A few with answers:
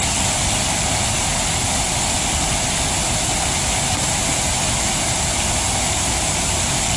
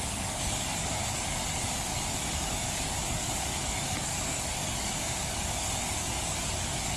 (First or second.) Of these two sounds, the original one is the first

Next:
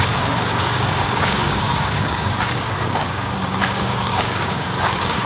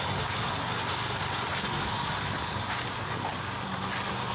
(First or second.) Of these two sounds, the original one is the second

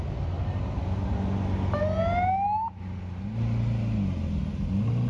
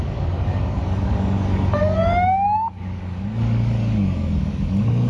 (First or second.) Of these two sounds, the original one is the first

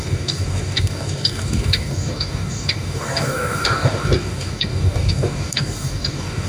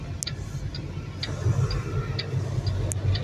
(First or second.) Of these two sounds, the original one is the second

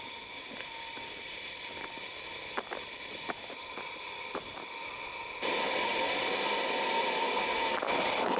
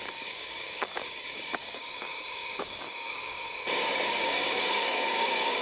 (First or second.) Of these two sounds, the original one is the first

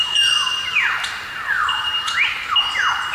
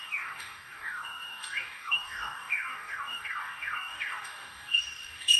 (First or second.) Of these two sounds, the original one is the first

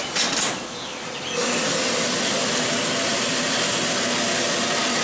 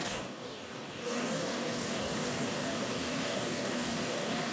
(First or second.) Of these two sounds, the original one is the first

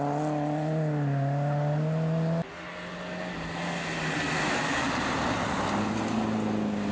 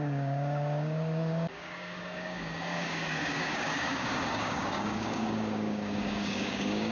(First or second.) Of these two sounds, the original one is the first